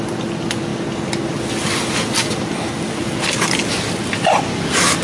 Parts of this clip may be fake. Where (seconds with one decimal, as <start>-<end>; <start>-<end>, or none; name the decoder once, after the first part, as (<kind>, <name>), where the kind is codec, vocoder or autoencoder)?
none